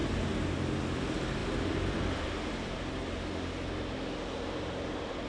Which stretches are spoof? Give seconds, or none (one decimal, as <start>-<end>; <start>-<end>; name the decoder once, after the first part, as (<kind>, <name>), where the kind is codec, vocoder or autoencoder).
none